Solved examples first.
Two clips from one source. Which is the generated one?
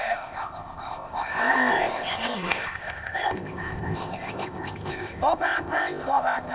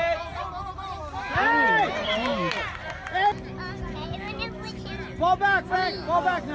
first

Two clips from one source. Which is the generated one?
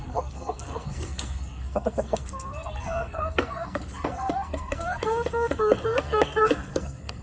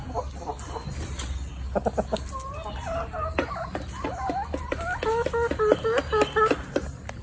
first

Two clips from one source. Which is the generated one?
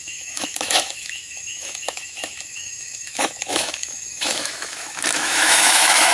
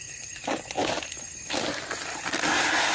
first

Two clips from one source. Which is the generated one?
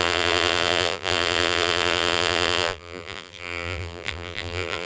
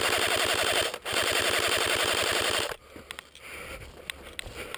first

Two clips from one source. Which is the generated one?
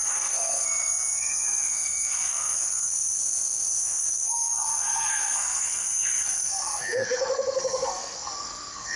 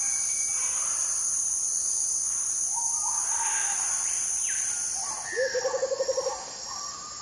first